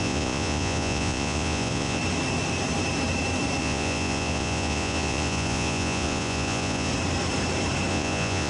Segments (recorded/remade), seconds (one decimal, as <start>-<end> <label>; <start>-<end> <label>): 0.0-2.0 remade; 2.0-3.6 recorded; 3.6-6.9 remade; 6.9-7.9 recorded; 7.9-8.5 remade